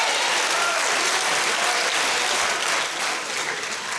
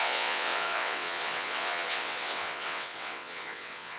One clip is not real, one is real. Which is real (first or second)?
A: first